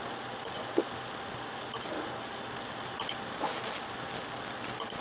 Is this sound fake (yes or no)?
no